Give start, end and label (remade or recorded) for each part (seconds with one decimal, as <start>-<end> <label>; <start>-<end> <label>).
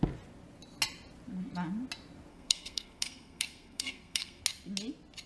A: 0.0-2.3 recorded; 2.3-4.4 remade; 4.4-5.3 recorded